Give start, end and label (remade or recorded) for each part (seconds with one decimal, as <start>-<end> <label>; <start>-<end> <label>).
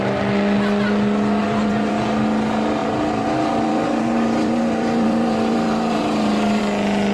0.0-1.4 recorded; 1.4-1.9 remade; 1.9-2.8 recorded; 2.8-6.6 remade; 6.6-7.1 recorded